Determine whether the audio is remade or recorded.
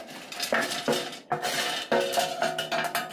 recorded